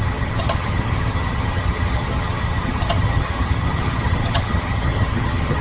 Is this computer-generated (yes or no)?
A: yes